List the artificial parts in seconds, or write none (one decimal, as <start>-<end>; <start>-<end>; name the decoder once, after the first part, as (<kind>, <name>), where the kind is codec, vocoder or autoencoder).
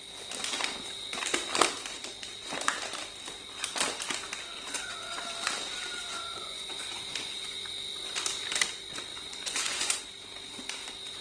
6.0-7.7 (vocoder, Vocos); 9.1-10.0